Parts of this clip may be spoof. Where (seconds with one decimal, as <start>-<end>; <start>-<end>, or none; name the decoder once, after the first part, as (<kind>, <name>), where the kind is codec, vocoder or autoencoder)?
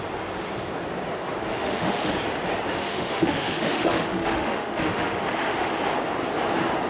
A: 1.5-2.1 (autoencoder, DAC-VAE); 2.7-5.8